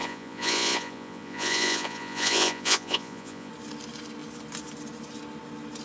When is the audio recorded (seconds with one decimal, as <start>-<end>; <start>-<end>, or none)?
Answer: 3.5-5.8